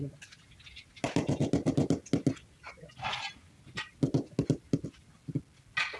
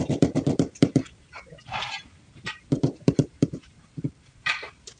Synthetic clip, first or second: second